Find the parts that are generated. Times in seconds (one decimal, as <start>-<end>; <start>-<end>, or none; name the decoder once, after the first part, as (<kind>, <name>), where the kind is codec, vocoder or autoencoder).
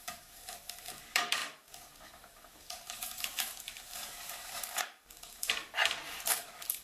0.0-5.8 (codec, DAC); 6.3-6.8